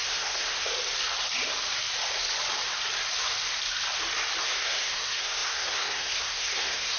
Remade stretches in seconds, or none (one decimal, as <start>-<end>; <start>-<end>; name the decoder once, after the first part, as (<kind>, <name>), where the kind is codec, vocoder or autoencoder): 0.0-0.7 (codec, SNAC); 4.4-7.0